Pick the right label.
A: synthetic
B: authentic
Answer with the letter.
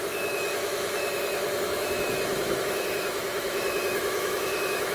A